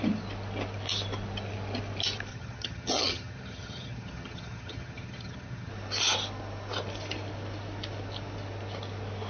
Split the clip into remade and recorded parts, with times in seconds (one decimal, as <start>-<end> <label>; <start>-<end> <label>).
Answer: 0.0-2.3 recorded; 2.3-5.7 remade; 5.7-9.3 recorded